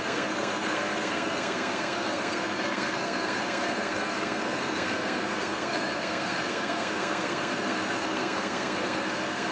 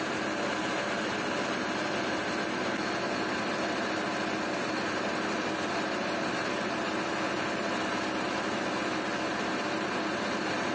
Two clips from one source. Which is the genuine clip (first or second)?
second